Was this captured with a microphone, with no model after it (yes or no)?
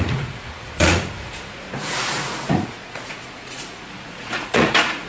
no